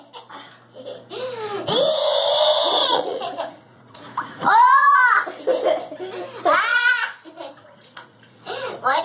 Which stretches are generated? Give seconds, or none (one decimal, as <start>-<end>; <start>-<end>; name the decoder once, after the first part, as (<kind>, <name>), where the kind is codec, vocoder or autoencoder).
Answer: 2.8-5.0 (vocoder, Vocos); 6.7-9.0